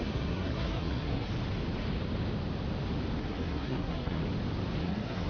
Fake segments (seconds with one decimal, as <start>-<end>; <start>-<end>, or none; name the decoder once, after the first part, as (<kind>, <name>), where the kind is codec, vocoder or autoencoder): 0.0-1.3 (codec, SNAC); 3.2-4.2; 4.8-5.3